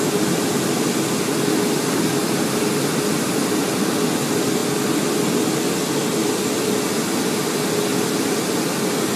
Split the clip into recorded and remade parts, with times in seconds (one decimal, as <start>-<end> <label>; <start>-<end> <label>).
0.0-9.2 recorded